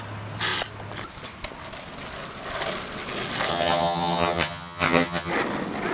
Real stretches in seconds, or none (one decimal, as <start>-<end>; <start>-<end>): 0.0-3.5; 5.3-5.9